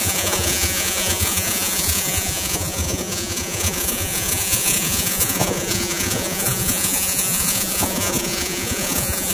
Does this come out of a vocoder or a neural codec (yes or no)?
yes